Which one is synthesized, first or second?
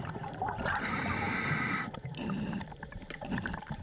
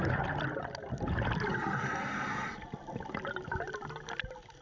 first